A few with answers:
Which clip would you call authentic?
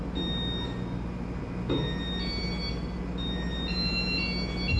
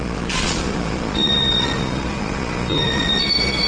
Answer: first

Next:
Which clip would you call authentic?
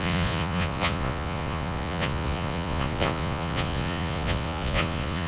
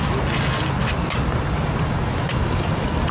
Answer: second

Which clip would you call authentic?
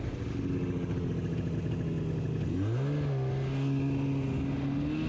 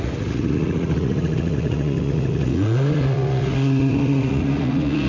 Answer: first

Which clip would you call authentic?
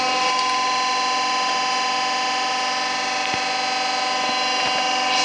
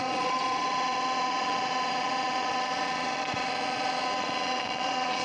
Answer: first